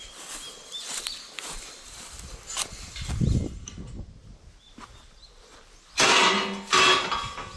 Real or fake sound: real